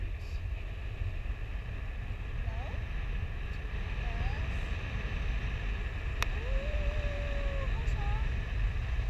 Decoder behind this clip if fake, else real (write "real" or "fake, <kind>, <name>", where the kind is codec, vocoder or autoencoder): real